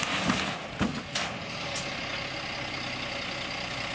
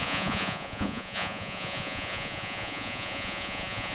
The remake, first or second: second